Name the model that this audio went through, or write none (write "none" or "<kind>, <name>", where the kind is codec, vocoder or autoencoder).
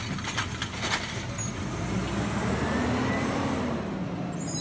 none